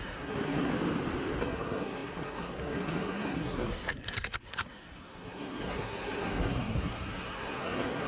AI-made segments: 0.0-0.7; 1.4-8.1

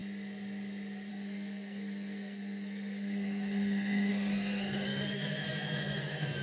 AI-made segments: 1.1-6.4